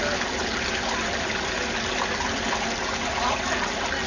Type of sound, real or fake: real